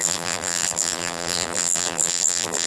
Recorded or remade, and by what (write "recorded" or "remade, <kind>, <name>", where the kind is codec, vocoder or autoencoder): remade, vocoder, BigVGAN v2